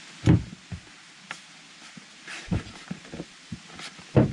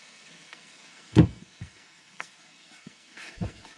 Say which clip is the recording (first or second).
first